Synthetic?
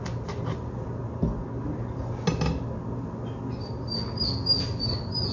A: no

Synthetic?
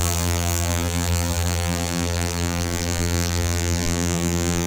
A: yes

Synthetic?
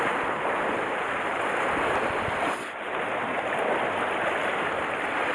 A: no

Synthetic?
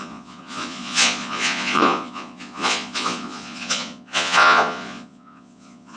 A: yes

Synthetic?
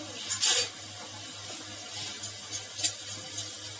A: no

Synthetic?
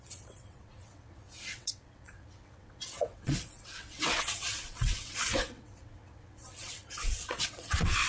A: yes